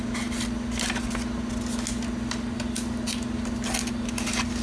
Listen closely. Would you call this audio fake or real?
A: real